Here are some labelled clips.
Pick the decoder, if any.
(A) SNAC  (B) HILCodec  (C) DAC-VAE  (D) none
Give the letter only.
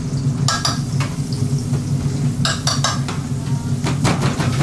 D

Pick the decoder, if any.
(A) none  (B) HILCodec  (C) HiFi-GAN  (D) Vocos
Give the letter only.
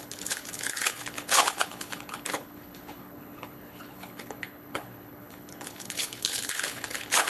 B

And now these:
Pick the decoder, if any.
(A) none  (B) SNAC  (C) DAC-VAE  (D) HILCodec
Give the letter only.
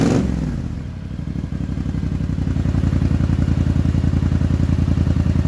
A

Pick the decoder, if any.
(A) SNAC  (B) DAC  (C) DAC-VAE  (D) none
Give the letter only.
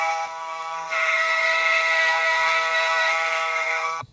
A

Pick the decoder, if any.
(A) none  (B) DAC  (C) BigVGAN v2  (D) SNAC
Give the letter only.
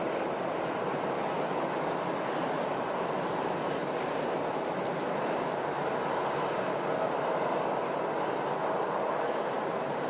A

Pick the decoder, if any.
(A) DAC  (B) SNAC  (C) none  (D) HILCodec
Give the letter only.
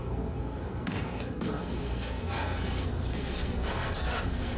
B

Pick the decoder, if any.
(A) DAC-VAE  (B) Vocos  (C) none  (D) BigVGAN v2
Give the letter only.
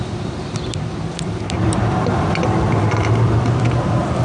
D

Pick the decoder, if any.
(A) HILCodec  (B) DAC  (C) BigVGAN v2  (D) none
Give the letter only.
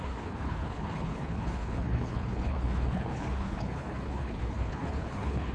A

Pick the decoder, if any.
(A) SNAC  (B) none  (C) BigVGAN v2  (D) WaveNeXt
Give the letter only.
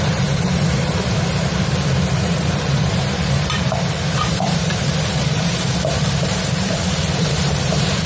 C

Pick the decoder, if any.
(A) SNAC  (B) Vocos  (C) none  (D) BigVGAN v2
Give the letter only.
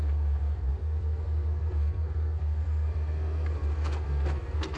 A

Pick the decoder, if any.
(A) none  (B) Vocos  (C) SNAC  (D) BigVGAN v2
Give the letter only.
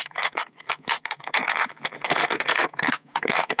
C